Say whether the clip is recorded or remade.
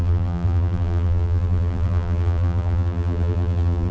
remade